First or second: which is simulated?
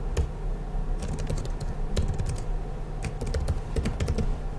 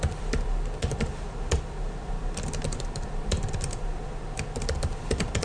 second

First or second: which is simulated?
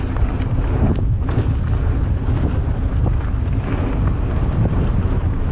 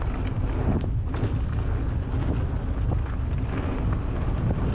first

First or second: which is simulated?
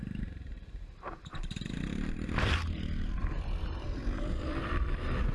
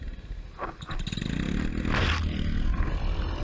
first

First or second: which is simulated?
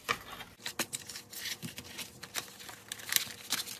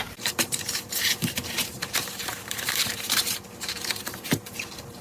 second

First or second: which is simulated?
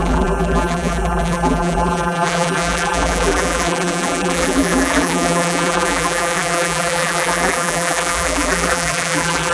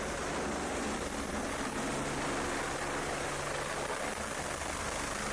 first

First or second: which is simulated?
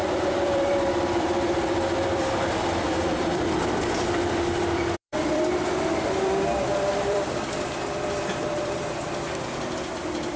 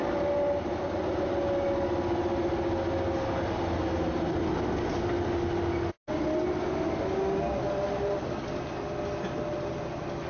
first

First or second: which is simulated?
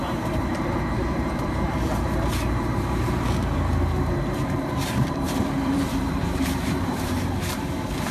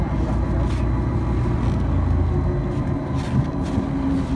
first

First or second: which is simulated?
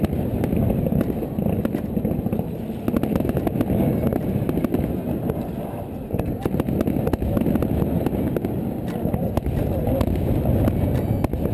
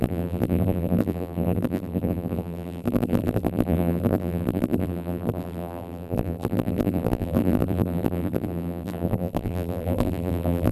second